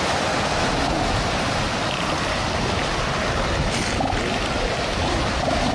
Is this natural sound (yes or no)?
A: yes